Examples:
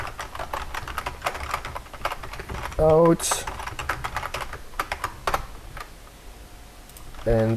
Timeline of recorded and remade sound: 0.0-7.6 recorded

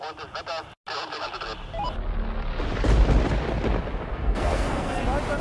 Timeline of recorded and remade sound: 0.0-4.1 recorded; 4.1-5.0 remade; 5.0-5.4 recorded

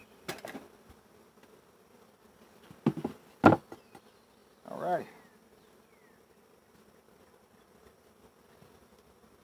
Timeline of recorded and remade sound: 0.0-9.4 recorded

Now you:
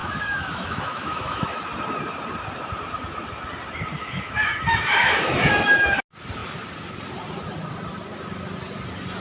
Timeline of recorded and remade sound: 0.0-1.6 remade; 1.6-4.0 recorded; 4.0-6.0 remade; 6.0-9.2 recorded

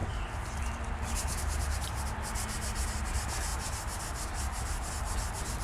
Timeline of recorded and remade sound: 0.0-5.6 recorded

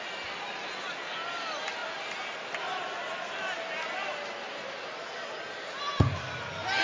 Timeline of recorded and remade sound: 0.0-6.8 recorded

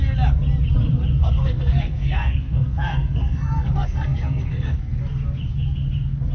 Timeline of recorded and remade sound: 0.0-1.2 recorded; 1.2-5.0 remade; 5.0-6.3 recorded

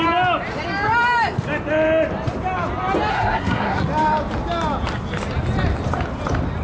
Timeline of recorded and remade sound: 0.0-3.1 recorded; 3.1-3.8 remade; 3.8-6.6 recorded